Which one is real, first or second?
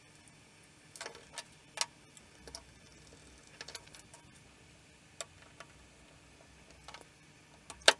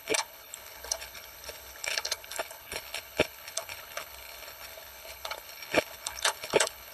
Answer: first